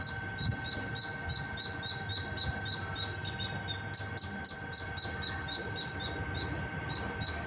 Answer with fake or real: real